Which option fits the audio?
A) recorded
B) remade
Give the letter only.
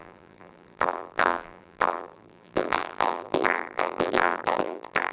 B